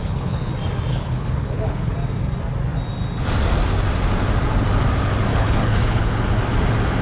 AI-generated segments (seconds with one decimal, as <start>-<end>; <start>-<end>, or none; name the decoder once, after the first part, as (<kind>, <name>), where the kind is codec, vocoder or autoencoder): 0.0-0.5 (codec, HILCodec); 0.9-1.9; 5.3-6.2

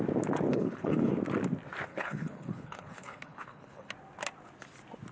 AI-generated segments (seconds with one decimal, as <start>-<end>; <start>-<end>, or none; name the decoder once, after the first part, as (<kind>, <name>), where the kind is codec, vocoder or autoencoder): 0.5-1.1 (codec, HILCodec); 1.9-3.9

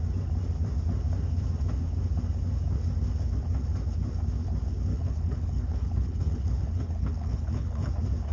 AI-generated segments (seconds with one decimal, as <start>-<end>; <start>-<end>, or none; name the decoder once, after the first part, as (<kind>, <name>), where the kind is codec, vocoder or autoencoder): 4.9-7.9 (codec, HILCodec)

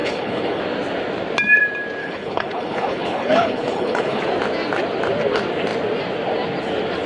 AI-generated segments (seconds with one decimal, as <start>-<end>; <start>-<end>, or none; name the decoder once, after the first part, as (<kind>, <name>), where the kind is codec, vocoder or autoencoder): 0.0-0.6 (codec, HILCodec); 2.0-4.2

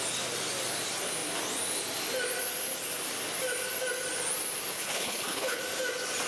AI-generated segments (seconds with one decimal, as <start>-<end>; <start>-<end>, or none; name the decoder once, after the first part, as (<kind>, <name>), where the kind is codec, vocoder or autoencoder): 4.7-5.6 (codec, HILCodec)

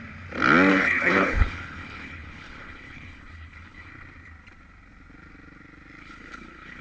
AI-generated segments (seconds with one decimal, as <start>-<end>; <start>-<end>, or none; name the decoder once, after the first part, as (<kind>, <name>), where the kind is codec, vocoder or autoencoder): 0.7-3.9 (codec, HILCodec); 6.0-6.8

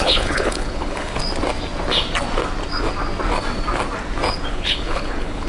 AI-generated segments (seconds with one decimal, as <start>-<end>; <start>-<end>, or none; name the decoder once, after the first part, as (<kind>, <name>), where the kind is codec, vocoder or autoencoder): 0.0-1.2 (codec, HILCodec); 4.5-5.5

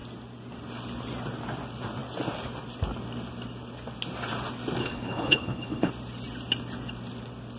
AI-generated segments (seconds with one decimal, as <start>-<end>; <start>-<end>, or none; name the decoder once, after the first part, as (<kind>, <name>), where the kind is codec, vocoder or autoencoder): 4.8-5.9 (codec, HILCodec)